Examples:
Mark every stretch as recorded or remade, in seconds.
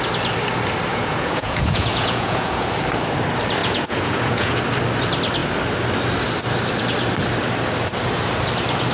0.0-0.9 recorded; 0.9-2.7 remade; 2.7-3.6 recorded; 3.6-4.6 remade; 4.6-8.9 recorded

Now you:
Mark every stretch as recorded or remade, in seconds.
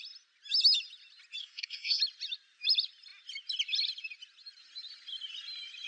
0.0-1.4 recorded; 1.4-2.0 remade; 2.0-5.9 recorded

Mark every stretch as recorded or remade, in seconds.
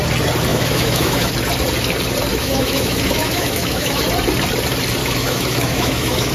0.0-0.5 recorded; 0.5-1.3 remade; 1.3-2.3 recorded; 2.3-4.0 remade; 4.0-5.0 recorded; 5.0-6.3 remade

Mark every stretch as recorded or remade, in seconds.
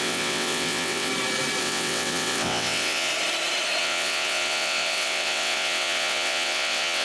0.0-1.1 remade; 1.1-1.6 recorded; 1.6-3.1 remade; 3.1-3.8 recorded; 3.8-7.0 remade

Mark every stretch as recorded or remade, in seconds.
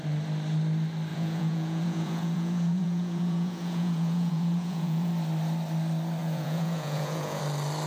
0.0-1.1 recorded; 1.1-5.1 remade; 5.1-6.2 recorded; 6.2-7.4 remade; 7.4-7.9 recorded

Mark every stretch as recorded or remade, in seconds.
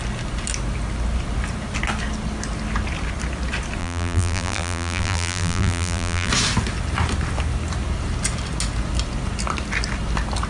0.0-3.8 recorded; 3.8-6.3 remade; 6.3-10.5 recorded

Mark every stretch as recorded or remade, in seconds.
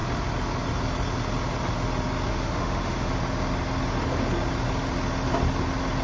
0.0-2.3 recorded; 2.3-3.1 remade; 3.1-6.0 recorded